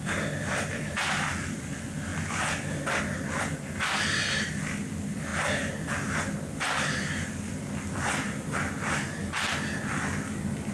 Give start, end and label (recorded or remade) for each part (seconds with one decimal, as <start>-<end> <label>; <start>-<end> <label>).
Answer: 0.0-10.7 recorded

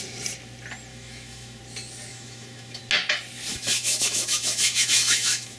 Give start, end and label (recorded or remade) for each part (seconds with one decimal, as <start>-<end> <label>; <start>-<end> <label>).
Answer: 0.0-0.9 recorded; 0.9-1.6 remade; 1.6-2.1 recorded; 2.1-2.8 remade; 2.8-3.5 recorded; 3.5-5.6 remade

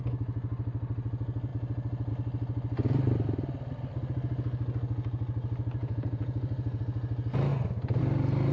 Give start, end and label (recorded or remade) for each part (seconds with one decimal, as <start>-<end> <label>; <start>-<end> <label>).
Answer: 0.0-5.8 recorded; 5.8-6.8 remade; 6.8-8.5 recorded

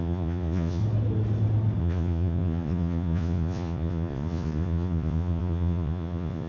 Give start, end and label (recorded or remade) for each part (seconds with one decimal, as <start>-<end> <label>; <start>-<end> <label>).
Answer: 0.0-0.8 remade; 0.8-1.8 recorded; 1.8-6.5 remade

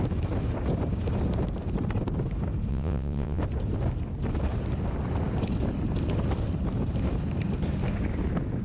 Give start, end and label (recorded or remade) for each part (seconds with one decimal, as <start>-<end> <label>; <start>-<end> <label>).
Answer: 0.0-2.7 recorded; 2.7-3.4 remade; 3.4-8.6 recorded

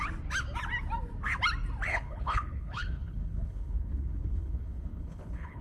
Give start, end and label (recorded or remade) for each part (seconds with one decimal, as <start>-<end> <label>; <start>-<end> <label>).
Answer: 0.0-1.9 recorded; 1.9-5.6 remade

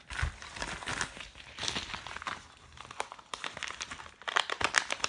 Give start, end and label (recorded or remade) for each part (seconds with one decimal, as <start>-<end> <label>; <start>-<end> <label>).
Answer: 0.0-5.1 recorded

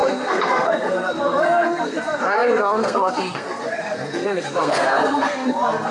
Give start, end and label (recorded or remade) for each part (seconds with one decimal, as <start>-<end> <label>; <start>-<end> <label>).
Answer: 0.0-5.9 remade